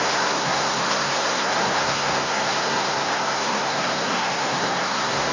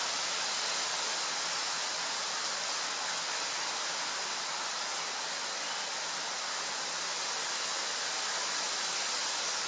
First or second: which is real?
second